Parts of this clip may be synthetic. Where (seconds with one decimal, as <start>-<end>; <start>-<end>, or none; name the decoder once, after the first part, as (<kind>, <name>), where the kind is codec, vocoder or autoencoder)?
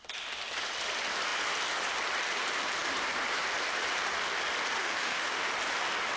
4.8-5.5 (autoencoder, DAC-VAE)